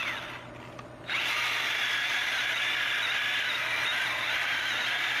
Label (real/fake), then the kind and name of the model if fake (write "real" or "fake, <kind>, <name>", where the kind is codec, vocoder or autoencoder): real